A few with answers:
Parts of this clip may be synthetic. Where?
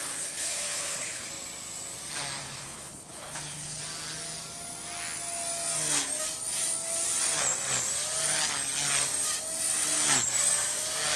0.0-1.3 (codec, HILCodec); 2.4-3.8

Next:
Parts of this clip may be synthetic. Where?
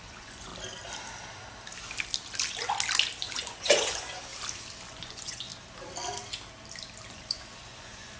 0.0-0.5 (vocoder, Vocos); 3.2-4.3; 4.9-5.5; 7.1-8.2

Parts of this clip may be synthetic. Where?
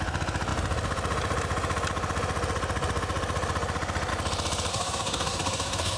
4.7-6.0 (codec, SNAC)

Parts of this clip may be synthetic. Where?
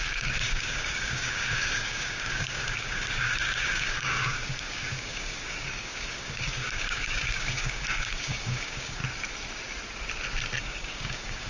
0.0-9.0 (codec, DAC); 10.6-11.5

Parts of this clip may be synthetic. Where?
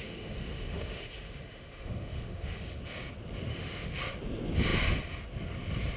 0.0-2.8 (autoencoder, DAC-VAE); 3.5-4.1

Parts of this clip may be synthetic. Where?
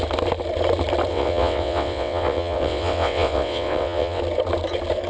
1.1-4.2 (vocoder, WaveNeXt)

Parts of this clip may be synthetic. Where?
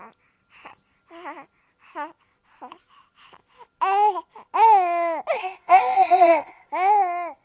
5.4-6.7 (codec, ZipCodec)